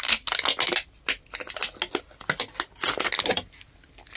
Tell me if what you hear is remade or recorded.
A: recorded